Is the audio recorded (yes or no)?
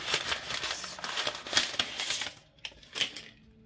yes